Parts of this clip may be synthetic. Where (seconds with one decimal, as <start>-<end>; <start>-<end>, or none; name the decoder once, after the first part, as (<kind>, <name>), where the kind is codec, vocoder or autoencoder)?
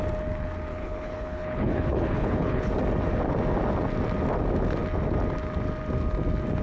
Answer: 0.7-2.7 (codec, HILCodec)